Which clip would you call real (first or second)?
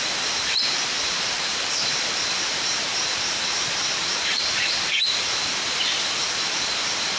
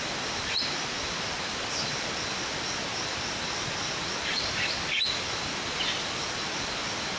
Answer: second